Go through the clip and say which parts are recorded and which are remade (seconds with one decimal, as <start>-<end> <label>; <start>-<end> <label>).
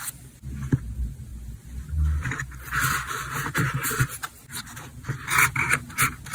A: 0.0-6.3 recorded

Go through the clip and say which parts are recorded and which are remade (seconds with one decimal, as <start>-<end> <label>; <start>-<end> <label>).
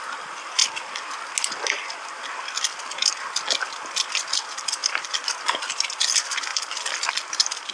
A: 0.0-7.7 recorded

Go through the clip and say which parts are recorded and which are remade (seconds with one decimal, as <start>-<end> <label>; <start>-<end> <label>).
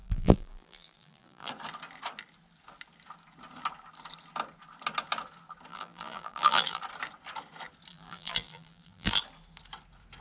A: 0.0-1.5 remade; 1.5-5.7 recorded; 5.7-6.8 remade; 6.8-7.9 recorded; 7.9-9.2 remade; 9.2-10.2 recorded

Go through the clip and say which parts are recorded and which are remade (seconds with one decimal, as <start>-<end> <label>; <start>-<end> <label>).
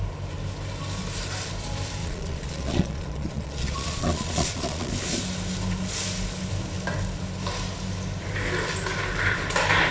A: 0.0-2.0 recorded; 2.0-4.9 remade; 4.9-9.9 recorded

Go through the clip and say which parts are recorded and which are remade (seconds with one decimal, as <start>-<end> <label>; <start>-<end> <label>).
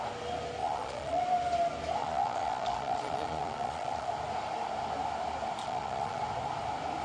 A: 0.0-0.6 recorded; 0.6-1.2 remade; 1.2-2.0 recorded; 2.0-4.1 remade; 4.1-5.6 recorded; 5.6-6.2 remade; 6.2-7.0 recorded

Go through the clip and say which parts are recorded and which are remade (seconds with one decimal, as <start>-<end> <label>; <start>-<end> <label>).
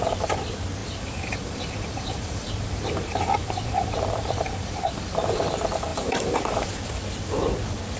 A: 0.0-0.8 recorded; 0.8-5.5 remade; 5.5-5.9 recorded; 5.9-6.8 remade; 6.8-8.0 recorded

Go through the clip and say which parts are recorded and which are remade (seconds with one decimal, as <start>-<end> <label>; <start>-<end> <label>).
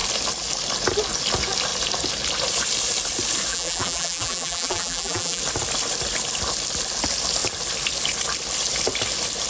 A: 0.0-3.5 recorded; 3.5-5.4 remade; 5.4-9.5 recorded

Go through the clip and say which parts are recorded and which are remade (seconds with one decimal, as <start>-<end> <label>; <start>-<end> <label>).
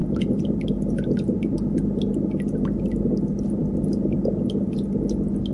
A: 0.0-5.5 recorded